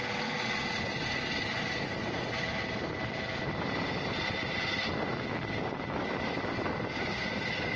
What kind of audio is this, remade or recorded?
recorded